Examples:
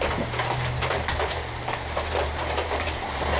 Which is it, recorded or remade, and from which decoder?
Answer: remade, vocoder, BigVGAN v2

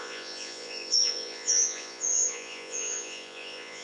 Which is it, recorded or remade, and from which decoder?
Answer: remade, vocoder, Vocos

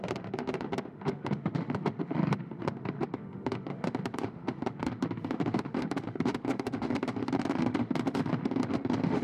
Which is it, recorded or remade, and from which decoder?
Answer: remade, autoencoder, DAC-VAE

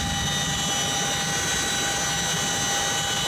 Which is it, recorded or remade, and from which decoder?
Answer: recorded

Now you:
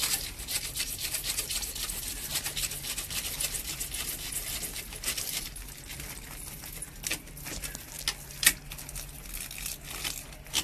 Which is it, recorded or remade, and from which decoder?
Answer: recorded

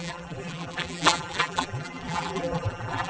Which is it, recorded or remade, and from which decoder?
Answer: remade, vocoder, BigVGAN v2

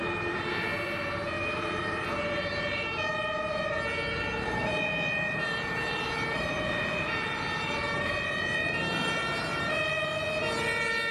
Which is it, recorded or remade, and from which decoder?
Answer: remade, vocoder, BigVGAN v2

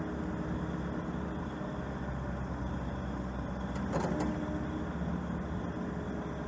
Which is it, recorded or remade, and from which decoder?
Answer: recorded